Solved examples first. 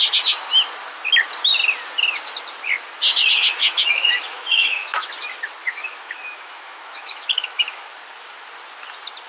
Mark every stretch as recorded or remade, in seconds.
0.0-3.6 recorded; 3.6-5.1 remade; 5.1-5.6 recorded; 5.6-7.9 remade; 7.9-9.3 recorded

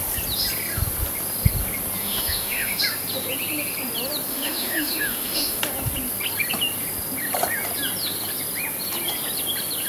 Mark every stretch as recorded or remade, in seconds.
0.0-2.0 recorded; 2.0-2.8 remade; 2.8-4.3 recorded; 4.3-5.6 remade; 5.6-9.9 recorded

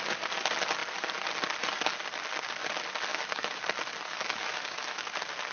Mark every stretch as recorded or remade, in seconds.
0.0-3.1 recorded; 3.1-3.6 remade; 3.6-4.1 recorded; 4.1-5.0 remade; 5.0-5.5 recorded

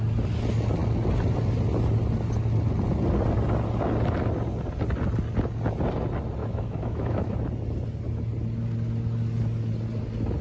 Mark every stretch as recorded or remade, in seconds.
0.0-6.4 recorded; 6.4-7.3 remade; 7.3-10.4 recorded

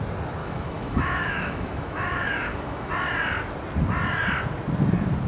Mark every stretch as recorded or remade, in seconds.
0.0-0.4 recorded; 0.4-2.9 remade; 2.9-5.3 recorded